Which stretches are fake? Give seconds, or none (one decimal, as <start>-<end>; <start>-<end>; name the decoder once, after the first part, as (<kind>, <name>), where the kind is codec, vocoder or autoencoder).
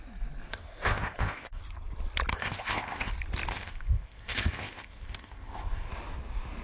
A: 0.5-1.6 (codec, ZipCodec); 2.3-3.1; 3.5-5.9